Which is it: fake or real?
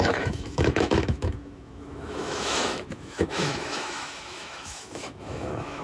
fake